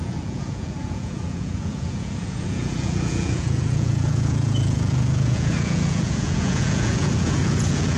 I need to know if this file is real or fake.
fake